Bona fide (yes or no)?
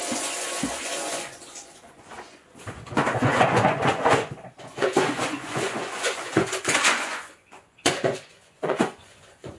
no